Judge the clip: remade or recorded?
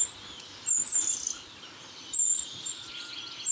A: recorded